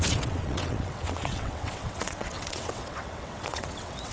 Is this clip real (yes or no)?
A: no